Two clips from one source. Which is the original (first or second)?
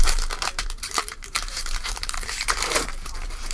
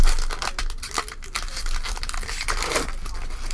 second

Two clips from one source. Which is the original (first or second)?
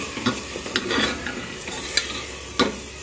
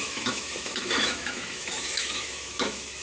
first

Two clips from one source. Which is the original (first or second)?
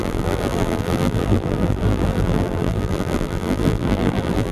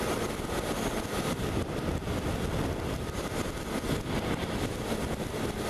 second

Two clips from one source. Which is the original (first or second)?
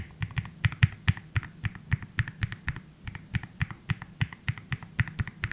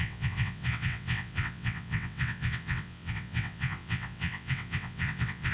first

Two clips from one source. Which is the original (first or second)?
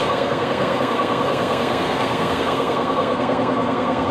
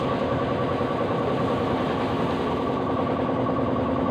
second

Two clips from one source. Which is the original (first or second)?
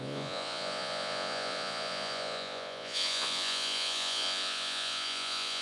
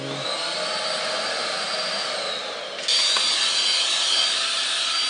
second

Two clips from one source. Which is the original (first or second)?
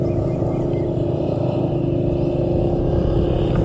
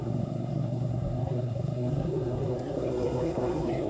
first